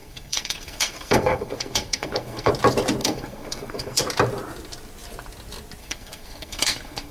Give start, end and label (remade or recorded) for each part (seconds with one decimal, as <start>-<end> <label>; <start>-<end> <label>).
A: 0.0-2.5 remade; 2.5-3.0 recorded; 3.0-4.0 remade; 4.0-5.8 recorded; 5.8-7.1 remade